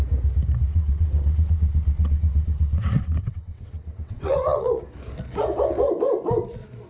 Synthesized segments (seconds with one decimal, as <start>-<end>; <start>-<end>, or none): 0.7-4.8